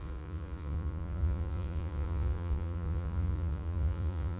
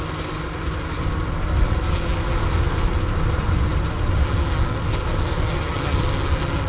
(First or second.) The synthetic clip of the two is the first